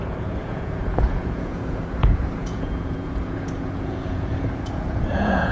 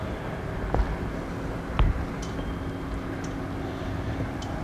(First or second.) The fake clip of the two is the first